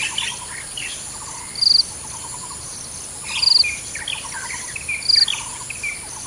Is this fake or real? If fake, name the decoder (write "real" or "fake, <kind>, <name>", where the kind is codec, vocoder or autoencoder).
real